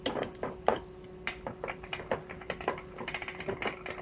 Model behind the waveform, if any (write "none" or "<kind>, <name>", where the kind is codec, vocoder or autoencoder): none